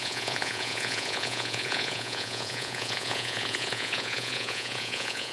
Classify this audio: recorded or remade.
remade